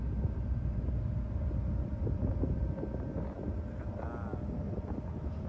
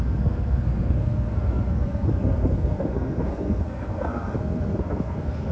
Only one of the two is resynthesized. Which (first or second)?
second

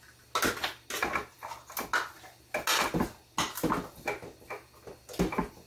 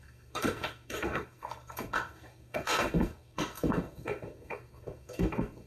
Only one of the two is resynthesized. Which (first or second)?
second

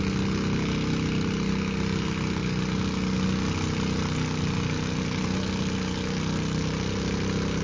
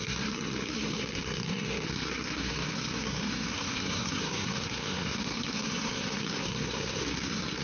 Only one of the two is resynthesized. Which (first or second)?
second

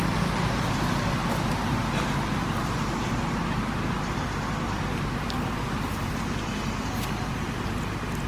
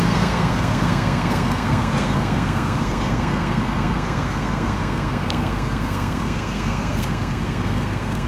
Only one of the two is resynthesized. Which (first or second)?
second